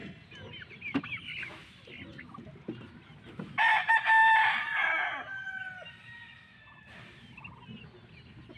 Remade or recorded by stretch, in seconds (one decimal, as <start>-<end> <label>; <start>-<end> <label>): 0.0-8.6 recorded